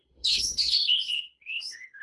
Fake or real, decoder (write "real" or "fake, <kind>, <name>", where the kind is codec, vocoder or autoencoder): fake, codec, HILCodec